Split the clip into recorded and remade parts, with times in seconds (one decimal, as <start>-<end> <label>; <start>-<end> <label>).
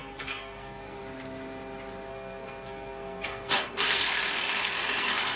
0.0-1.0 remade; 1.0-2.1 recorded; 2.1-5.4 remade